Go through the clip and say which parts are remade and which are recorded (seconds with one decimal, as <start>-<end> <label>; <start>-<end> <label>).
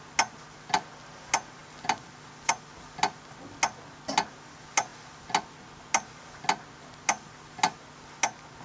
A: 0.0-8.6 recorded